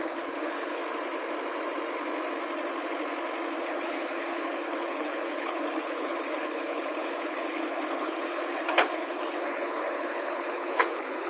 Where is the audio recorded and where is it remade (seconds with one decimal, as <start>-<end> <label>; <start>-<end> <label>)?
0.0-0.8 remade; 0.8-3.6 recorded; 3.6-11.3 remade